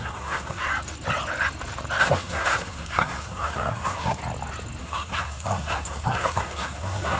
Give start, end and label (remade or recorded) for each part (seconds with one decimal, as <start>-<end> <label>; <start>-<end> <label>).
0.0-0.7 remade; 0.7-2.0 recorded; 2.0-4.2 remade; 4.2-4.8 recorded; 4.8-7.2 remade